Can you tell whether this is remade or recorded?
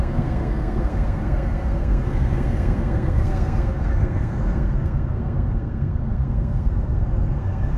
remade